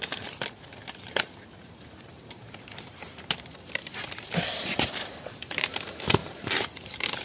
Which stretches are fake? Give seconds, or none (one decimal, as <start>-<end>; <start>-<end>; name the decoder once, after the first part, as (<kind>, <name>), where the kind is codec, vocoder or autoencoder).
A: 0.8-3.1 (vocoder, BigVGAN v2); 3.8-5.7; 6.2-7.2